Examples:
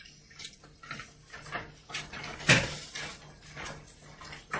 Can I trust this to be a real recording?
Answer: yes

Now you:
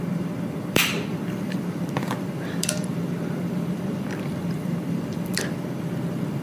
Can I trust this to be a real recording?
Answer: no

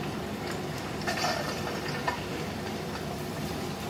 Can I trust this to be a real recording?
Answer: no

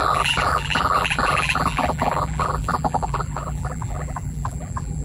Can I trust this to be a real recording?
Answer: no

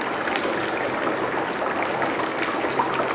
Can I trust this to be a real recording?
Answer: yes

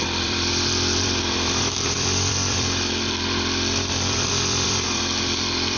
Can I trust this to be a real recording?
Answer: no